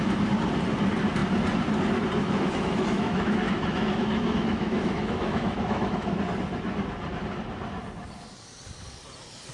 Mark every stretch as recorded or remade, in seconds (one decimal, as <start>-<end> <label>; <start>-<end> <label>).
0.0-2.2 recorded; 2.2-6.2 remade; 6.2-9.5 recorded